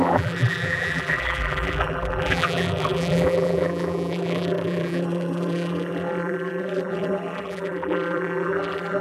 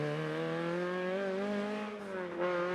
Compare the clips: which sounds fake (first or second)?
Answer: first